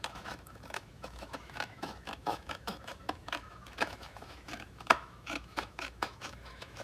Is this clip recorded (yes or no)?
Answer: no